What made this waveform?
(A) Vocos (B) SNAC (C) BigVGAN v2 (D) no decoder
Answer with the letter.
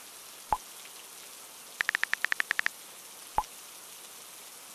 D